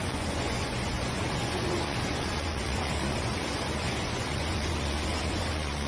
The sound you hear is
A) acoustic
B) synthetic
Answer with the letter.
B